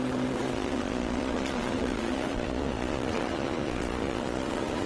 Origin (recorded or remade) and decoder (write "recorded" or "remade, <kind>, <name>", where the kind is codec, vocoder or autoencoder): remade, vocoder, Vocos